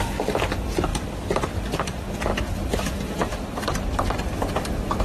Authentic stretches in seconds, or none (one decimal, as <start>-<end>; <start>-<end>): 0.0-0.9; 1.5-2.3